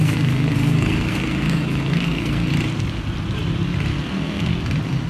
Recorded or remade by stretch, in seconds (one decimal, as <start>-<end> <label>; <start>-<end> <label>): 0.0-2.5 remade; 2.5-3.9 recorded; 3.9-4.5 remade; 4.5-5.1 recorded